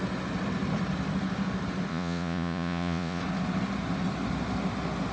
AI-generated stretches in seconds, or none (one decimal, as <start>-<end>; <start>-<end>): 1.9-3.2